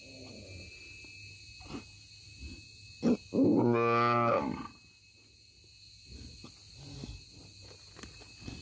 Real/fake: real